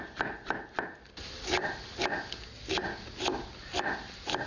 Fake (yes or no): yes